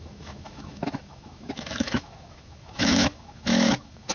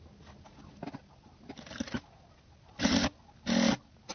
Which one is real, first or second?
second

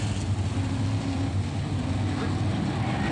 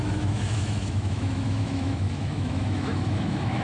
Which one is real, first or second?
first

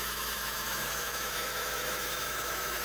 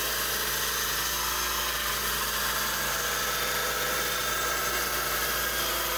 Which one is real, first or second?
second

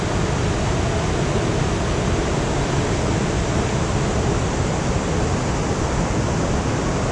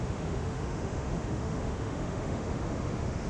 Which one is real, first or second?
first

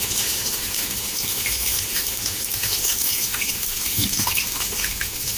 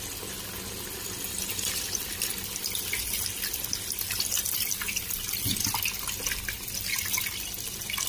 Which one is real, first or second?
second